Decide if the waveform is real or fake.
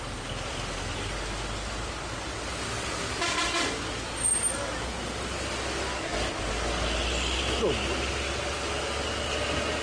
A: real